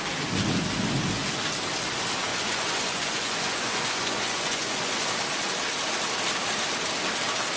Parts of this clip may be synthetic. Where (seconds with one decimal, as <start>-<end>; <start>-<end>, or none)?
2.3-5.1